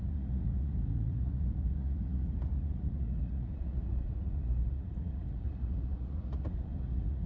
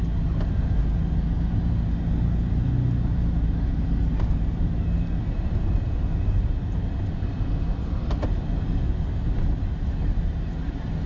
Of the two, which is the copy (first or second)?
first